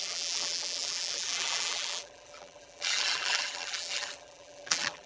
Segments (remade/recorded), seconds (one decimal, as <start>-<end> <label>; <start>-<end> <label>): 0.0-5.1 remade

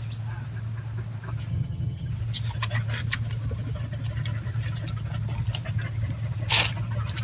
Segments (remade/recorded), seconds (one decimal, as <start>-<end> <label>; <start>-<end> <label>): 0.0-1.5 recorded; 1.5-2.1 remade; 2.1-7.2 recorded